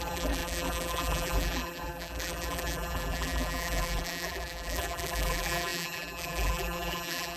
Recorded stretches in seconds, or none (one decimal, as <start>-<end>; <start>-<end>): none